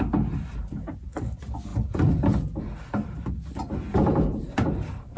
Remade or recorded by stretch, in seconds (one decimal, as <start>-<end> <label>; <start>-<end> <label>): 0.0-5.2 recorded